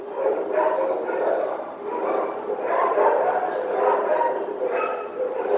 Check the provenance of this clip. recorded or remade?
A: recorded